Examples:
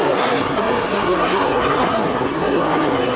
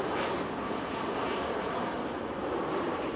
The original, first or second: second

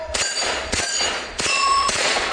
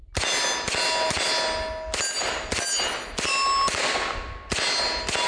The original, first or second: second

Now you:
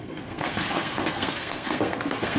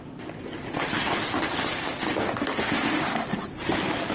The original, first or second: second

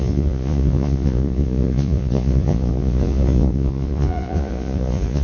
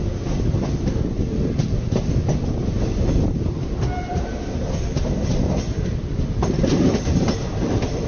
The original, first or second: second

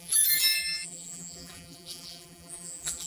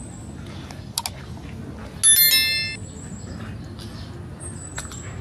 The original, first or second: second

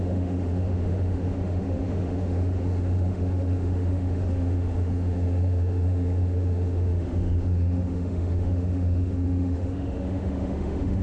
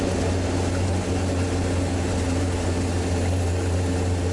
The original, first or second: second